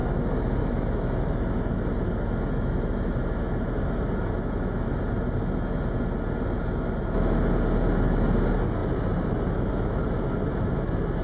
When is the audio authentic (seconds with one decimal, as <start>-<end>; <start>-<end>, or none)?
5.0-11.2